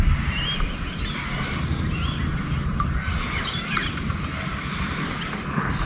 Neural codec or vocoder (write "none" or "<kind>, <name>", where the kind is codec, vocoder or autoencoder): none